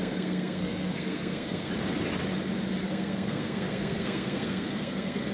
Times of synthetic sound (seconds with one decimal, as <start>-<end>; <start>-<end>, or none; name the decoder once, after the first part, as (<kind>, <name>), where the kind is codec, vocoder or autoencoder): 0.0-1.7 (codec, SNAC); 2.8-5.3